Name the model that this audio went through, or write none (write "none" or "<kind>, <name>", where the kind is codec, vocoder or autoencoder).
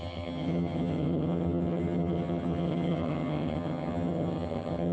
vocoder, HiFi-GAN